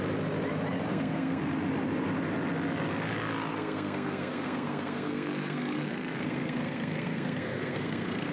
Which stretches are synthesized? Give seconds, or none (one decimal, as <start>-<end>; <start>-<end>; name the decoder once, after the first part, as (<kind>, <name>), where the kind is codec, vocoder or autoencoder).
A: 0.9-1.4 (codec, SNAC); 3.5-8.3